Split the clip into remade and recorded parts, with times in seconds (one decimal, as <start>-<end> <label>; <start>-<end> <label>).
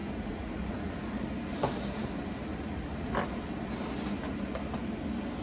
0.0-0.9 remade; 0.9-2.5 recorded; 2.5-3.1 remade; 3.1-5.4 recorded